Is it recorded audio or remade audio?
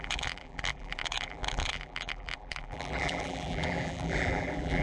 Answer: remade